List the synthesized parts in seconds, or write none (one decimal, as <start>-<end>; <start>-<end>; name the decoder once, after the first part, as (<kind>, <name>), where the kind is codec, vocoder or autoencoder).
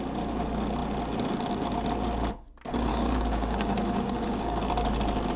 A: 2.9-4.7 (codec, DAC)